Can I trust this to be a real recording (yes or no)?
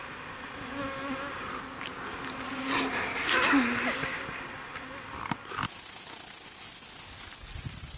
yes